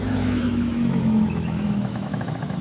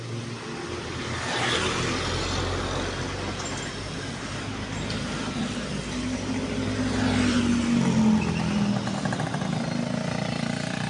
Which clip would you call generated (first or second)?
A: first